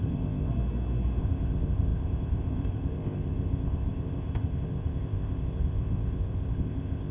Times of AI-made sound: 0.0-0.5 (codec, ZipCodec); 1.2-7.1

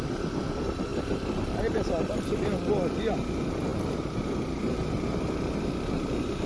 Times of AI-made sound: 0.9-1.6 (vocoder, BigVGAN v2)

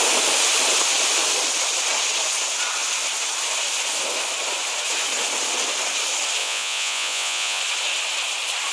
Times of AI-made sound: 6.4-7.6 (vocoder, Vocos)

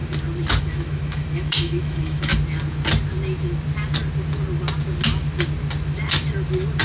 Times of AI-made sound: 0.6-2.3 (autoencoder, DAC-VAE)

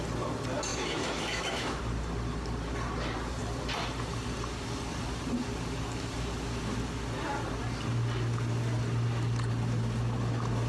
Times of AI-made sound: 0.7-1.8 (autoencoder, DAC-VAE)

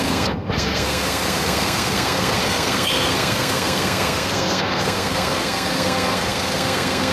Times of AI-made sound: 0.0-7.1 (codec, SNAC)

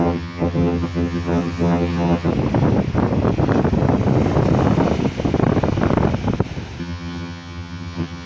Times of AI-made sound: 0.0-2.3 (vocoder, HiFi-GAN); 6.8-8.3

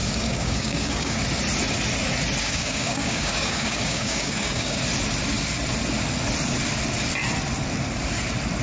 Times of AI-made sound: 0.0-1.2 (codec, DAC); 2.4-4.8